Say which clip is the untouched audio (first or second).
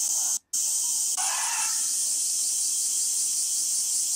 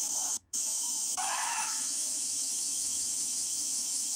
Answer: first